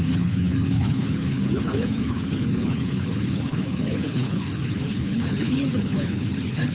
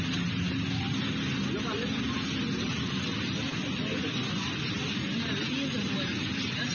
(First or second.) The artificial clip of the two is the first